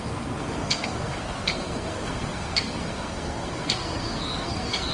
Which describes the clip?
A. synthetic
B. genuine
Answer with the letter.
A